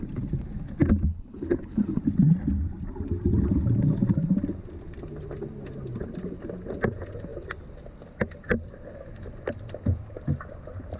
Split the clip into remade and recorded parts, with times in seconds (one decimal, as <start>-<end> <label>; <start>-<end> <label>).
0.0-1.1 recorded; 1.1-2.0 remade; 2.0-11.0 recorded